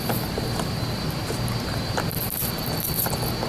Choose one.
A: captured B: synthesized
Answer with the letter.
A